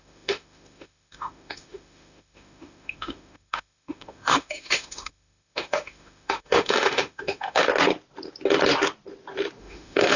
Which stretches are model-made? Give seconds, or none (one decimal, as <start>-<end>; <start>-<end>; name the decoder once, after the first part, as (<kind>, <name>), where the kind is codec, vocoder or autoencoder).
0.0-7.7 (autoencoder, DAC-VAE); 9.6-10.2